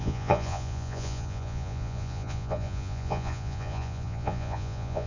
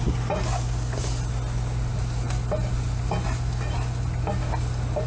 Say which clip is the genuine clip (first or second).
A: second